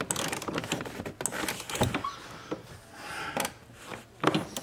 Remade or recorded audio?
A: recorded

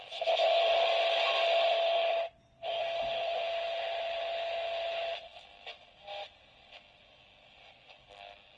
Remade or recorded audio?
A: recorded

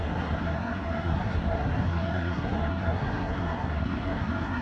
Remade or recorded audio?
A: remade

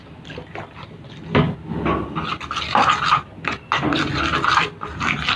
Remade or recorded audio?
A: recorded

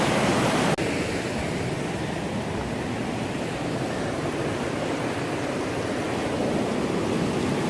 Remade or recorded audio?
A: recorded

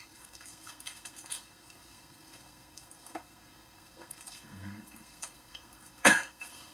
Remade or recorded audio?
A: remade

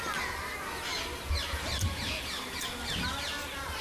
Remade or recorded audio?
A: recorded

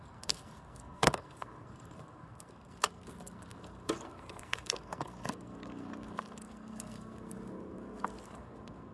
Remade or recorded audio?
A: remade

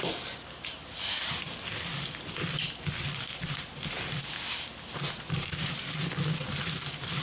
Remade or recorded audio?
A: recorded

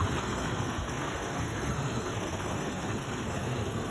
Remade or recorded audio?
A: remade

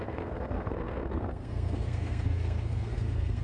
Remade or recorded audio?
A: remade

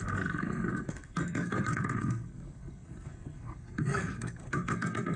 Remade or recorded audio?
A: remade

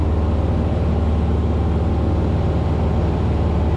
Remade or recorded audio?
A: recorded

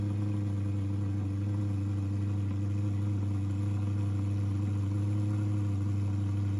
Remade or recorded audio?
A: recorded